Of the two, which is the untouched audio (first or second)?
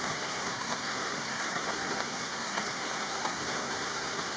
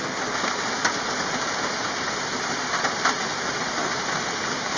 second